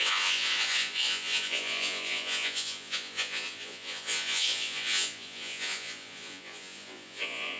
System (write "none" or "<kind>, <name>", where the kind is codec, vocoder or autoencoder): vocoder, Vocos